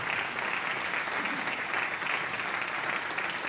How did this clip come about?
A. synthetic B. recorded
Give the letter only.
B